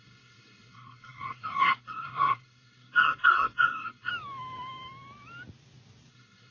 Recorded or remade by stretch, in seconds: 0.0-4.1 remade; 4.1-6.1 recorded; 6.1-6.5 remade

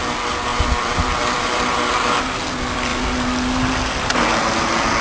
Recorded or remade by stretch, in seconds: 0.0-0.5 recorded; 0.5-2.1 remade; 2.1-5.0 recorded

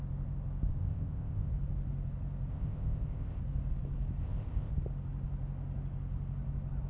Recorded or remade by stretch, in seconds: 0.0-0.8 recorded; 0.8-1.5 remade; 1.5-2.5 recorded; 2.5-3.4 remade; 3.4-4.2 recorded; 4.2-4.7 remade; 4.7-6.9 recorded

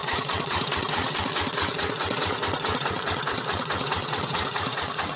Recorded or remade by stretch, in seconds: 0.0-5.2 remade

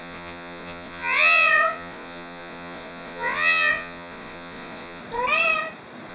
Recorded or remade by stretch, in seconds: 0.0-5.0 remade; 5.0-6.1 recorded

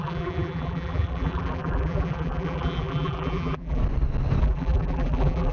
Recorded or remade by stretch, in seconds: 0.0-3.8 remade; 3.8-4.4 recorded; 4.4-5.5 remade

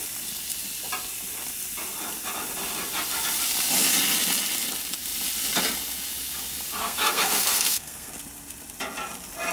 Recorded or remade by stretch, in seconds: 0.0-6.8 recorded; 6.8-8.1 remade; 8.1-9.5 recorded